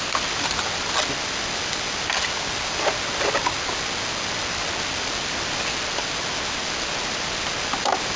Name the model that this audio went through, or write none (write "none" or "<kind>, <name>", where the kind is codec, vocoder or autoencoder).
none